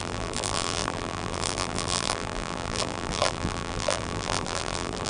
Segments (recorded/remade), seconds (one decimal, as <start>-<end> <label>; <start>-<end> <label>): 0.0-5.1 remade